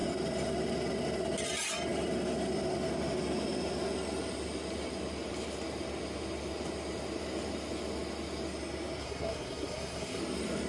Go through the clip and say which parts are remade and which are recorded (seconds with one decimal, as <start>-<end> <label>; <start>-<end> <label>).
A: 0.0-9.0 recorded; 9.0-10.2 remade; 10.2-10.7 recorded